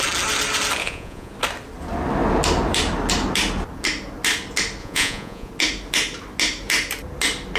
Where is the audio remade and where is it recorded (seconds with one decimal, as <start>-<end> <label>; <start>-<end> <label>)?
0.0-0.8 recorded; 0.8-1.3 remade; 1.3-4.8 recorded; 4.8-5.5 remade; 5.5-7.6 recorded